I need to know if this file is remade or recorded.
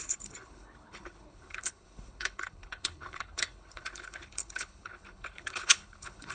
remade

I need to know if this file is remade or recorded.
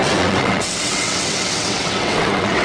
remade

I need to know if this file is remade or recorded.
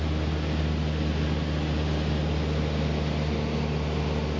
recorded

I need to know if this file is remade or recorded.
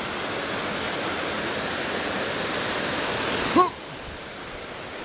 recorded